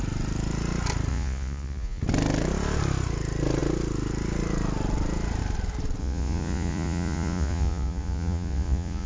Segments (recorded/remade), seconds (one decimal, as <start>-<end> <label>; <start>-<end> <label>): 0.0-1.1 recorded; 1.1-2.0 remade; 2.0-6.0 recorded; 6.0-9.1 remade